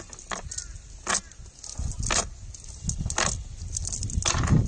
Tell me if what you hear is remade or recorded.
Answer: recorded